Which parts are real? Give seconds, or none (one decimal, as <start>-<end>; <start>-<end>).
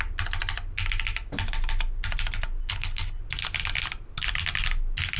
0.0-2.6; 3.2-5.2